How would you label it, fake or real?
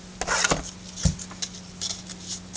real